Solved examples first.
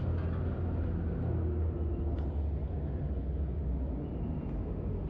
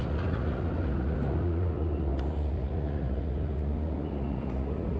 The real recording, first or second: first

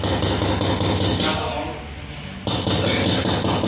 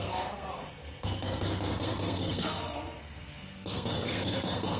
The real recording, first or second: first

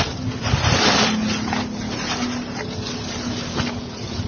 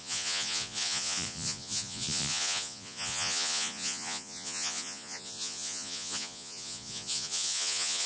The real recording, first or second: first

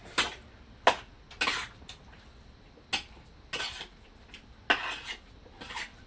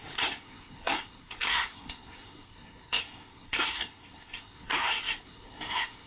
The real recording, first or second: first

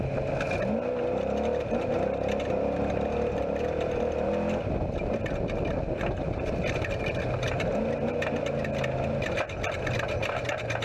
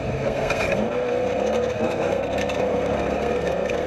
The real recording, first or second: first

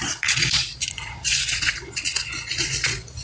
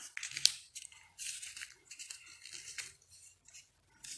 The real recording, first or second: second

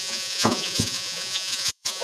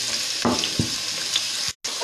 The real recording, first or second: second